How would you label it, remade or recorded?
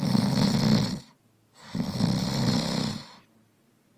recorded